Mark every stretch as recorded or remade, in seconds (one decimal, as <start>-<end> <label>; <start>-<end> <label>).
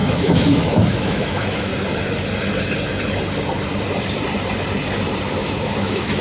0.0-1.7 remade; 1.7-5.4 recorded; 5.4-6.2 remade